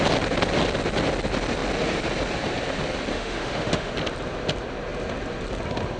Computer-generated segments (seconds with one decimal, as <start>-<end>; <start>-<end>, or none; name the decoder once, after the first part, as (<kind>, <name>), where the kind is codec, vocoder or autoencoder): 3.1-3.9 (autoencoder, DAC-VAE)